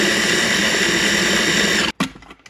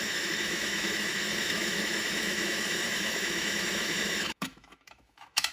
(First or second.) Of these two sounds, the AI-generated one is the second